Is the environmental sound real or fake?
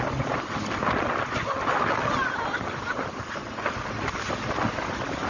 real